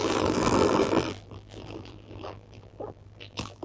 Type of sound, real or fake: fake